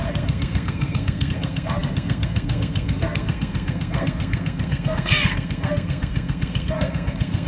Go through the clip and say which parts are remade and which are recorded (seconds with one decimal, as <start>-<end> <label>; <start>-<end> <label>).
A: 0.0-7.5 remade

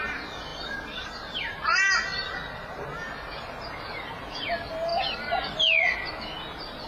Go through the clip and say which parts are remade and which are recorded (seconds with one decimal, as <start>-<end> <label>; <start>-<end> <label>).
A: 0.0-6.9 recorded

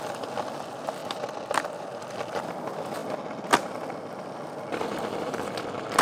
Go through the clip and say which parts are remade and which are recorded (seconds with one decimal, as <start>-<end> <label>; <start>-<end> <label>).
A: 0.0-6.0 recorded

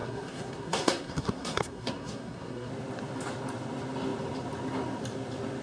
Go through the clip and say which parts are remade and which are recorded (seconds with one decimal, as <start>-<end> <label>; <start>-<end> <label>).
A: 0.0-2.7 remade; 2.7-5.6 recorded

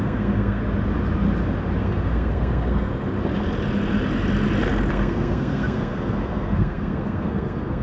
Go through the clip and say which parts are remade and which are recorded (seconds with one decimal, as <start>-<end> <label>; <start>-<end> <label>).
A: 0.0-0.6 remade; 0.6-1.8 recorded; 1.8-2.9 remade; 2.9-4.9 recorded; 4.9-7.8 remade

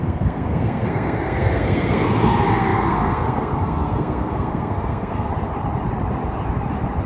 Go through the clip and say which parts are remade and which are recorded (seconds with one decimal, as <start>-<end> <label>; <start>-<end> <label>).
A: 0.0-5.3 remade; 5.3-7.1 recorded

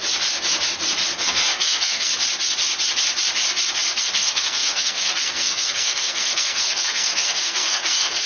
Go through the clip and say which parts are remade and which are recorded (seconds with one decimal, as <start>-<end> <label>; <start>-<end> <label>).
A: 0.0-1.2 recorded; 1.2-2.1 remade; 2.1-4.0 recorded; 4.0-8.3 remade

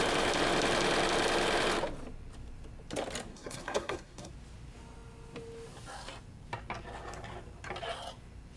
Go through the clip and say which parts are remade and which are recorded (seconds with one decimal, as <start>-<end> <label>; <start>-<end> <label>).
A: 0.0-3.3 recorded; 3.3-4.3 remade; 4.3-8.6 recorded